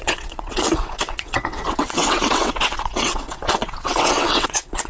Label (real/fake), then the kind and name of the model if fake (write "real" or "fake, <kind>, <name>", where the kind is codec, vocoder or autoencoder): fake, vocoder, WaveNeXt